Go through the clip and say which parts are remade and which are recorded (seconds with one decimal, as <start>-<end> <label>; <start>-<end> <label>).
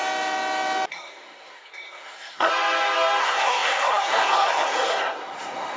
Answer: 0.0-0.9 recorded; 0.9-2.5 remade; 2.5-3.2 recorded; 3.2-5.8 remade